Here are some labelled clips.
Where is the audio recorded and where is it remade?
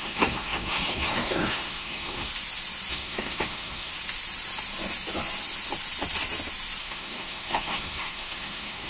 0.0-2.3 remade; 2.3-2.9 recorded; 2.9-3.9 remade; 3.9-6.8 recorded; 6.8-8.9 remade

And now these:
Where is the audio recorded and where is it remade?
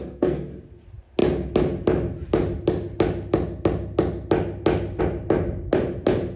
0.0-0.5 remade; 0.5-6.4 recorded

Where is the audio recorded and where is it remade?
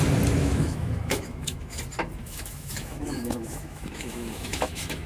0.0-0.4 recorded; 0.4-1.8 remade; 1.8-2.2 recorded; 2.2-5.1 remade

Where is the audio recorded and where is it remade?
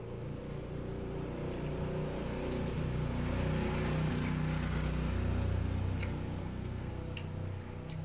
0.0-6.4 recorded; 6.4-6.9 remade; 6.9-8.0 recorded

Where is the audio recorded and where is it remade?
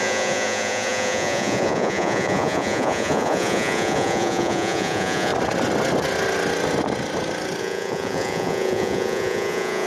0.0-5.3 remade; 5.3-7.6 recorded; 7.6-9.9 remade